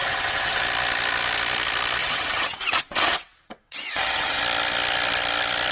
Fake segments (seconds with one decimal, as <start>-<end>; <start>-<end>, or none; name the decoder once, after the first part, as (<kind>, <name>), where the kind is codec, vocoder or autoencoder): 0.0-0.6 (vocoder, WaveNeXt); 2.0-4.4